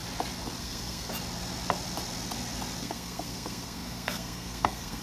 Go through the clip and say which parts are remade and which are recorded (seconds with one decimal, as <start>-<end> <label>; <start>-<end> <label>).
0.0-0.6 recorded; 0.6-1.1 remade; 1.1-2.8 recorded; 2.8-5.0 remade

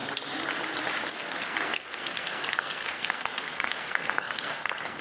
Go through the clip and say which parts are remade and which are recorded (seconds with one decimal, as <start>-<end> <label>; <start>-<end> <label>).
0.0-1.1 recorded; 1.1-5.0 remade

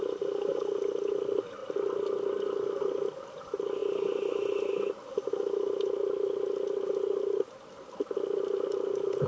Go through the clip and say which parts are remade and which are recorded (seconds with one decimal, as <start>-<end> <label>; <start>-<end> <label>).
0.0-9.3 recorded

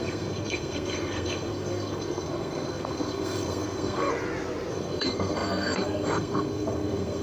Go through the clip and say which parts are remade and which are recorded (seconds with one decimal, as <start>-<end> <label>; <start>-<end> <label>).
0.0-4.1 remade; 4.1-4.7 recorded; 4.7-7.2 remade

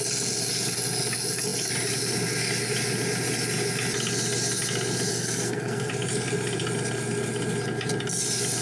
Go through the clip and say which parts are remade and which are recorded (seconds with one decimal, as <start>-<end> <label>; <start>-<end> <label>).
0.0-5.1 recorded; 5.1-5.9 remade; 5.9-8.6 recorded

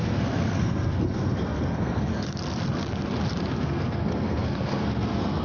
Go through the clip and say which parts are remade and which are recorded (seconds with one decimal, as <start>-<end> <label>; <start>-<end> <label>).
0.0-2.1 remade; 2.1-3.5 recorded; 3.5-5.4 remade

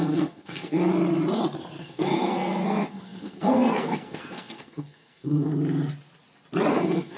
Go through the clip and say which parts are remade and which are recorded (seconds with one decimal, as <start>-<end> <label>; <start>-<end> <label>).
0.0-0.9 remade; 0.9-1.8 recorded; 1.8-5.5 remade; 5.5-6.7 recorded; 6.7-7.2 remade